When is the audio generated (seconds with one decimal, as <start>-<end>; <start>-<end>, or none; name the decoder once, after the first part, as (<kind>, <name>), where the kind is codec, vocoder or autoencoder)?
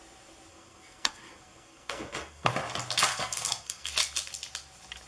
0.5-2.5 (codec, SNAC); 3.1-3.9